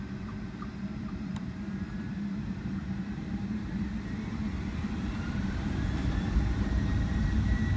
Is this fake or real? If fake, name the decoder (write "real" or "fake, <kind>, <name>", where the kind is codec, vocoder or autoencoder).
fake, vocoder, BigVGAN v2